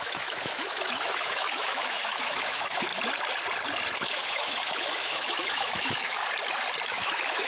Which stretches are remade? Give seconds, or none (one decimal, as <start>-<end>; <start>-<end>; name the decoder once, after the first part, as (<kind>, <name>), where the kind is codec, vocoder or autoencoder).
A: 0.0-2.9 (autoencoder, DAC-VAE); 4.1-6.2; 6.8-7.5